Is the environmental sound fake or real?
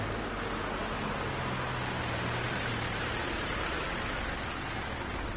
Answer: real